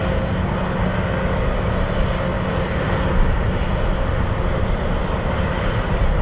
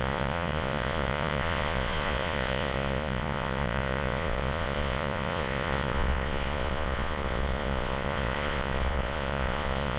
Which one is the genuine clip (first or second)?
first